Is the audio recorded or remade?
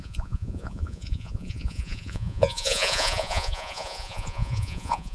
remade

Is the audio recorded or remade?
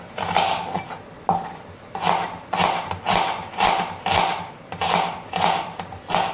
recorded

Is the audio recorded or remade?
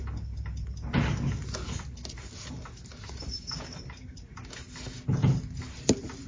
recorded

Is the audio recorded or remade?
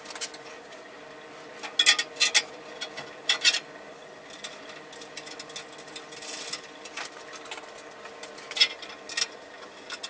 recorded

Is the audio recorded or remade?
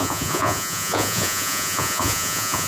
remade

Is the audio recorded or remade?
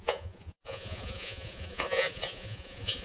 remade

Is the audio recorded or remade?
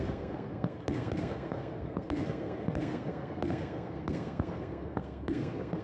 remade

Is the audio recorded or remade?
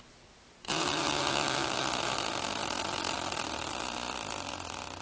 recorded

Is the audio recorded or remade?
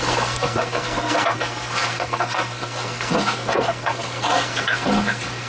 remade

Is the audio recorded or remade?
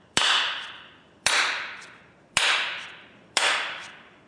remade